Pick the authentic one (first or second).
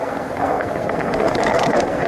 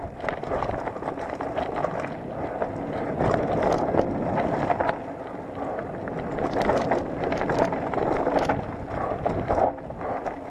second